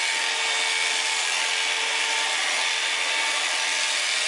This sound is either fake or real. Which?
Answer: real